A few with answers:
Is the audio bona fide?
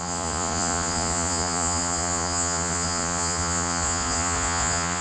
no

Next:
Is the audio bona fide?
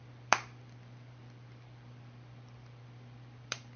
no